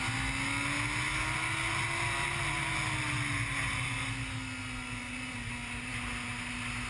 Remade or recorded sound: recorded